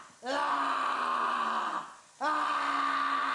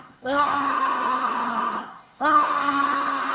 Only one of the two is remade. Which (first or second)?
second